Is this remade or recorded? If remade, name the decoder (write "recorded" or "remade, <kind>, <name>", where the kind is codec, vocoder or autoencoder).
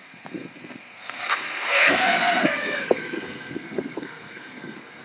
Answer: remade, codec, SNAC